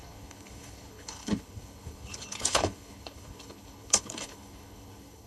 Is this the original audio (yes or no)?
no